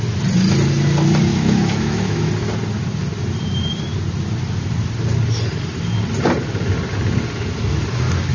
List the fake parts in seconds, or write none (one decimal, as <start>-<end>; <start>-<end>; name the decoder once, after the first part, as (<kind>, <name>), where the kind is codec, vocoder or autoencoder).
1.3-2.3 (autoencoder, DAC-VAE)